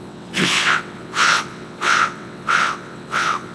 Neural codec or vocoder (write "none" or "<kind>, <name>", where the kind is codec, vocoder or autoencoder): vocoder, WaveNeXt